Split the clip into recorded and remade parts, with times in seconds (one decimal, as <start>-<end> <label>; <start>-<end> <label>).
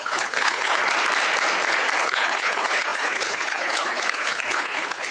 0.0-0.8 remade; 0.8-2.0 recorded; 2.0-5.1 remade